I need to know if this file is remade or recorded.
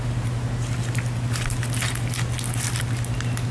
recorded